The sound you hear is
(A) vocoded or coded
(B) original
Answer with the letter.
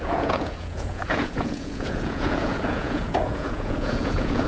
A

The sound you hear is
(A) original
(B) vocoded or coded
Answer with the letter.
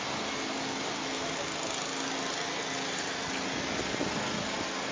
A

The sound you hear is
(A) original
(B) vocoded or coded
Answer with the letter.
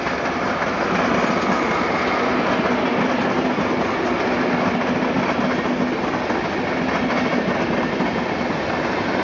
A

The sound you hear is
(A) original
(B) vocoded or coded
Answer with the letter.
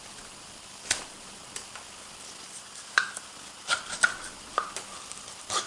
B